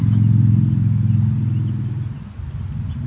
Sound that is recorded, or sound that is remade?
recorded